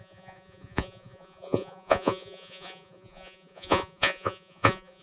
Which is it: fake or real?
fake